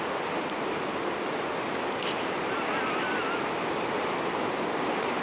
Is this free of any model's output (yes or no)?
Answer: yes